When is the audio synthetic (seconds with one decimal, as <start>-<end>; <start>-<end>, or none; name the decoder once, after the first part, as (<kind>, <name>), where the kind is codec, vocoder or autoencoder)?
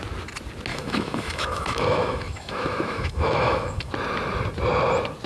0.7-3.9 (autoencoder, DAC-VAE)